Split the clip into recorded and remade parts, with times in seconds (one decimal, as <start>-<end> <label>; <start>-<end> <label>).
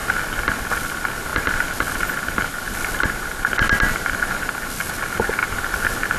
0.0-6.2 recorded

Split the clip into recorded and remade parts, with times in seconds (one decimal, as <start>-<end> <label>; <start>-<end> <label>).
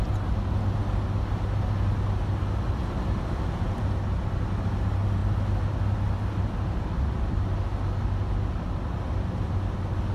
0.0-10.1 recorded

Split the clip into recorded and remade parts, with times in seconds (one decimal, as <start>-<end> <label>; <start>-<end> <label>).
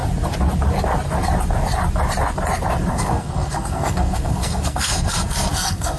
0.0-2.9 recorded; 2.9-6.0 remade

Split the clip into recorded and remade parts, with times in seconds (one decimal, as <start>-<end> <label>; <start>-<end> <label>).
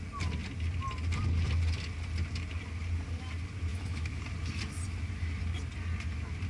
0.0-3.7 recorded; 3.7-4.2 remade; 4.2-6.5 recorded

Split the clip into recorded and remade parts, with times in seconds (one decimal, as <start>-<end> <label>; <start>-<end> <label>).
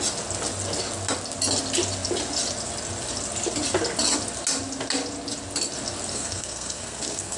0.0-6.1 recorded; 6.1-7.4 remade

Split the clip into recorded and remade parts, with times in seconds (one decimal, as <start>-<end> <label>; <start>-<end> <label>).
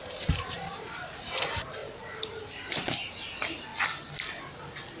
0.0-3.7 remade; 3.7-5.0 recorded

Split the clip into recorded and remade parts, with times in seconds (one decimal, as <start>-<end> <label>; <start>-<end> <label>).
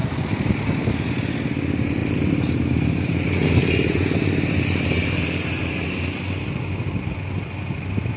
0.0-0.8 remade; 0.8-2.0 recorded; 2.0-6.1 remade; 6.1-8.2 recorded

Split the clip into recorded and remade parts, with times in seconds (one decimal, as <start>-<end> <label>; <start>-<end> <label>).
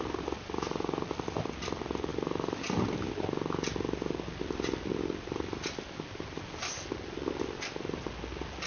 0.0-8.7 recorded